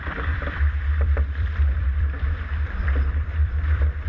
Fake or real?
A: fake